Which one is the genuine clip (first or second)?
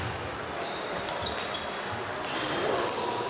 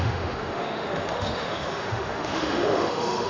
first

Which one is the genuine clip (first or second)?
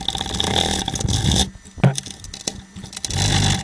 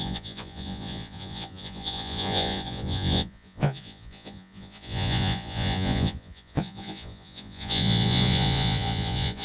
first